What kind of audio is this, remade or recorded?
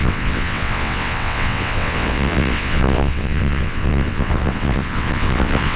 remade